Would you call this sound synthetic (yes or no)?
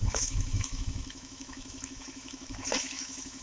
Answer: yes